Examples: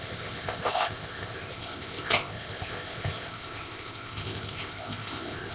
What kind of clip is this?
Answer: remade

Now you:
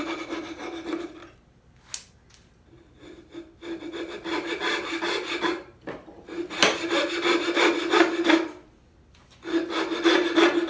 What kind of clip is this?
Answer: recorded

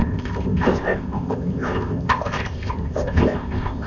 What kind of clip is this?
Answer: remade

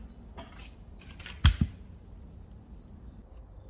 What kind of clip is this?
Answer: recorded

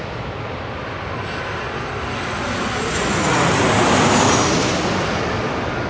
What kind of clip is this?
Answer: recorded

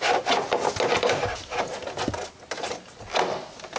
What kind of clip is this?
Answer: recorded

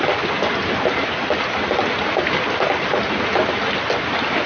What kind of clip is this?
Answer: recorded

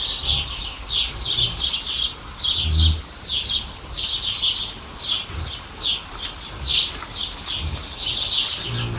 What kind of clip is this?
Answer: recorded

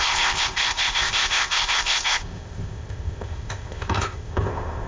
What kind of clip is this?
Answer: remade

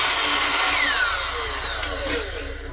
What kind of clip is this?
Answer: recorded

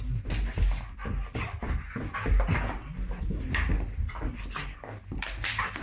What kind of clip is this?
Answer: recorded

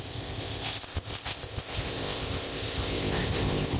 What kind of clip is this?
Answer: remade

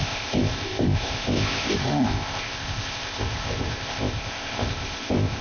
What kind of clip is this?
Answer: remade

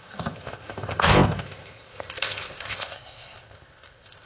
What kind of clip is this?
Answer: remade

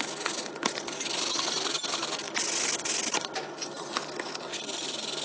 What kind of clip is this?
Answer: recorded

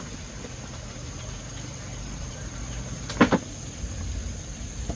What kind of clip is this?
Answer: recorded